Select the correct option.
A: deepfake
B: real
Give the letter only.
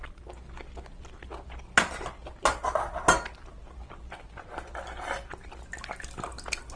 B